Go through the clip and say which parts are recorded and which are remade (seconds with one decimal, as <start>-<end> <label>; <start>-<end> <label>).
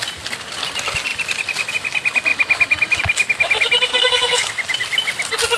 0.0-3.9 recorded; 3.9-4.5 remade; 4.5-5.6 recorded